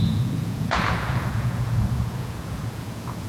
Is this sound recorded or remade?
remade